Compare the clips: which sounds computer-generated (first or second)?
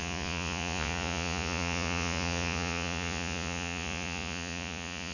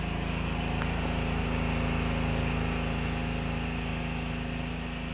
first